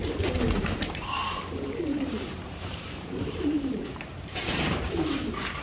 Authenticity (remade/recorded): remade